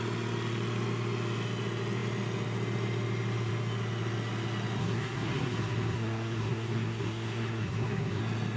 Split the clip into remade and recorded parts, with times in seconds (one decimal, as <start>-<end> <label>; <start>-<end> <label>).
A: 0.0-4.8 recorded; 4.8-8.2 remade; 8.2-8.6 recorded